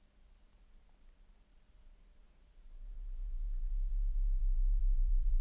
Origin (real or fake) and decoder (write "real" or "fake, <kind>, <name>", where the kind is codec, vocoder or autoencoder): fake, vocoder, BigVGAN v2